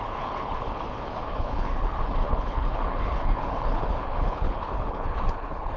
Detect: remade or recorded remade